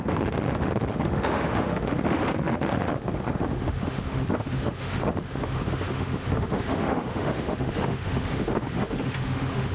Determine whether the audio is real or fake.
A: fake